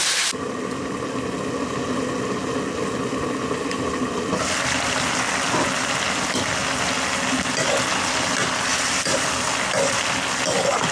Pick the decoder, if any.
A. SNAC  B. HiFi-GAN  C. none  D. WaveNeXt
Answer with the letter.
C